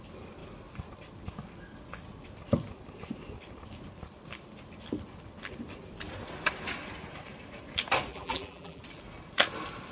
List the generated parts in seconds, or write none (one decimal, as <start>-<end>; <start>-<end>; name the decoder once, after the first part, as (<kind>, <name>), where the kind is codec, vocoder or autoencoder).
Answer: 8.1-8.8 (vocoder, BigVGAN v2)